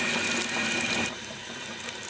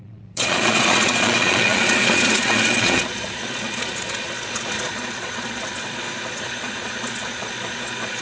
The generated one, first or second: second